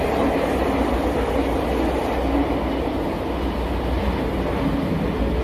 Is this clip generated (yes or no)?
no